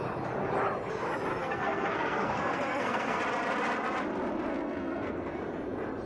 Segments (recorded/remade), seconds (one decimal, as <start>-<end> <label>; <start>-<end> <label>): 0.0-1.3 recorded; 1.3-3.2 remade; 3.2-4.5 recorded; 4.5-5.4 remade; 5.4-6.1 recorded